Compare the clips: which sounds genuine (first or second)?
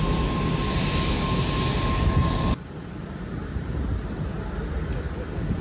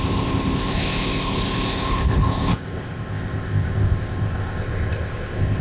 first